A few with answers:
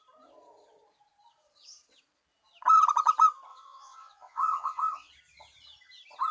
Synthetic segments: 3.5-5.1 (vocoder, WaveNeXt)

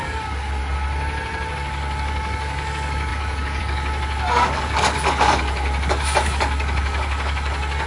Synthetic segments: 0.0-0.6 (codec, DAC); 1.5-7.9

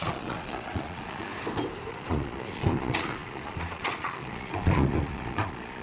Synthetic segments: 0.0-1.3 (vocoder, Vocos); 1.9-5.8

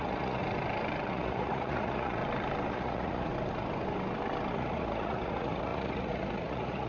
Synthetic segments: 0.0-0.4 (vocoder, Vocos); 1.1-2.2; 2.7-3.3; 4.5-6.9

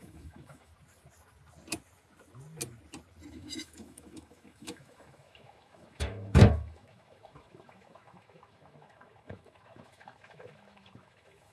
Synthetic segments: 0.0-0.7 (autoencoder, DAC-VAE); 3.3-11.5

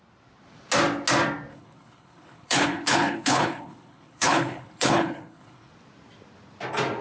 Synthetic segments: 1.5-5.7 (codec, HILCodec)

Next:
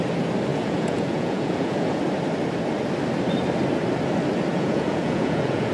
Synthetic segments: 0.5-2.0 (vocoder, Vocos); 4.5-5.7

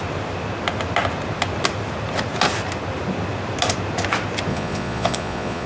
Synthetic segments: 4.5-5.7 (vocoder, Vocos)